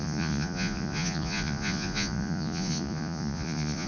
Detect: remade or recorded remade